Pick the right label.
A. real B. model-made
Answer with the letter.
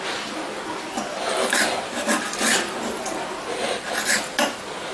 A